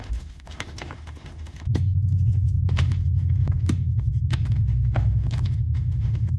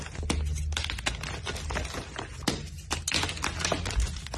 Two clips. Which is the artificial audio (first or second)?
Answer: first